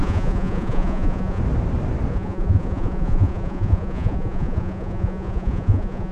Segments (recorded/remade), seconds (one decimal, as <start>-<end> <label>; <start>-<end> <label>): 0.0-1.4 remade; 1.4-2.1 recorded; 2.1-6.1 remade